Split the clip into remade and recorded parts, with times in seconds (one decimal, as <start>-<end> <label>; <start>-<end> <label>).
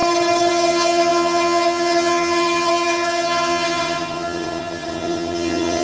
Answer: 0.0-0.5 recorded; 0.5-5.8 remade